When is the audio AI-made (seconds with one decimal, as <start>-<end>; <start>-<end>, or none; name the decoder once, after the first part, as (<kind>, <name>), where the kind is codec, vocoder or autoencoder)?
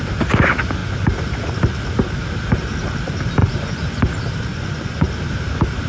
3.4-4.0 (vocoder, Vocos); 4.5-5.1